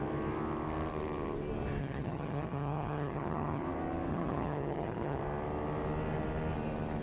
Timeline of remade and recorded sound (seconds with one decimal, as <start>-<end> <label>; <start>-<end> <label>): 0.0-1.8 recorded; 1.8-3.6 remade; 3.6-4.1 recorded; 4.1-5.2 remade; 5.2-7.0 recorded

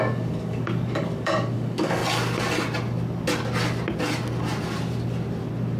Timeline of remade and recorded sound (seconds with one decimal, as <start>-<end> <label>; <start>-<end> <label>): 0.0-2.0 remade; 2.0-5.8 recorded

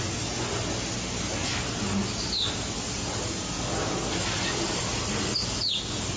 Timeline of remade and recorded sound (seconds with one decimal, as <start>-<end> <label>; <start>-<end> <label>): 0.0-6.2 recorded

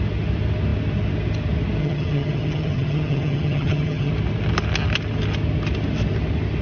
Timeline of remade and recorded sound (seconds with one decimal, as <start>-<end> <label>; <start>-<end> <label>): 0.0-1.8 recorded; 1.8-4.1 remade; 4.1-6.6 recorded

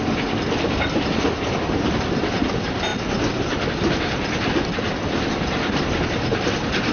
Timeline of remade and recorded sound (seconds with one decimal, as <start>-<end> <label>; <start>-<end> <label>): 0.0-6.9 recorded

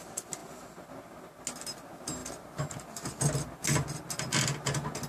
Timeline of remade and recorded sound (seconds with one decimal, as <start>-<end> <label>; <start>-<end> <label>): 0.0-5.1 recorded